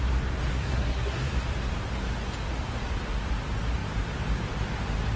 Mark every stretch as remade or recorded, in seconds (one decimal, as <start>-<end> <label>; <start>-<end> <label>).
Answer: 0.0-0.5 recorded; 0.5-1.3 remade; 1.3-5.2 recorded